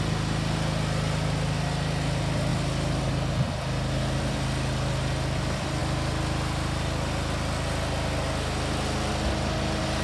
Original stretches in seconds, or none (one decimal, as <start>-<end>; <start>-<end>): 0.0-10.0